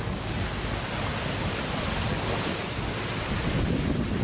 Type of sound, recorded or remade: recorded